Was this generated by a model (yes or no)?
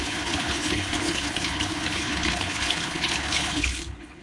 yes